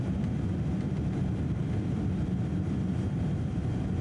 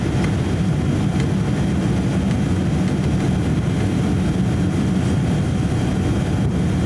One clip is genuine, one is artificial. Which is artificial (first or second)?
first